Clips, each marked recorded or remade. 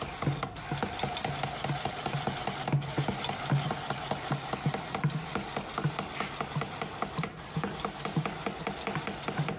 recorded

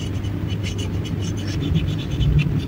recorded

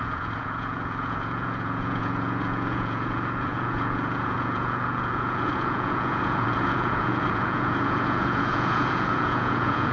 remade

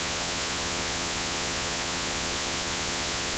remade